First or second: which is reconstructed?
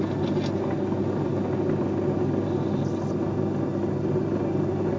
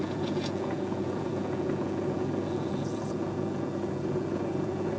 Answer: second